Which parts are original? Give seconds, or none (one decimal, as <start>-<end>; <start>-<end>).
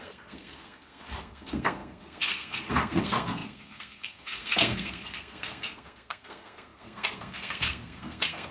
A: none